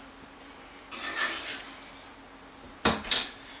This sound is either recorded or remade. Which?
remade